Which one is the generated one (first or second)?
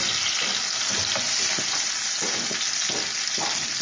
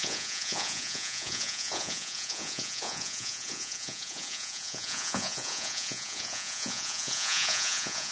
second